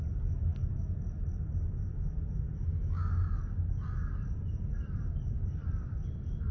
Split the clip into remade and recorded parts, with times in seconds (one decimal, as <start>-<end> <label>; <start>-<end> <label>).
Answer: 0.0-6.5 recorded